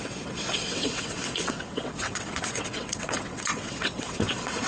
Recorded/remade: remade